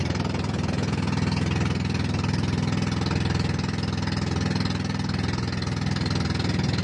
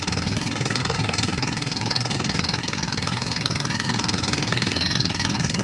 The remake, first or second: second